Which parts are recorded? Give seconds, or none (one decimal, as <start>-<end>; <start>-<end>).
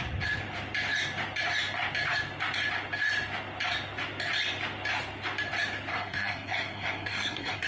0.0-5.9